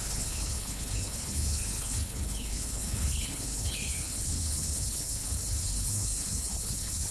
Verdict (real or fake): fake